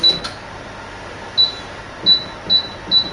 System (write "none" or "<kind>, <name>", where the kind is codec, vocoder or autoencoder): none